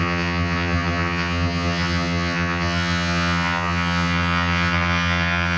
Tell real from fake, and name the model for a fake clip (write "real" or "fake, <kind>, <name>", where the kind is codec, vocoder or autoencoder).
fake, vocoder, HiFi-GAN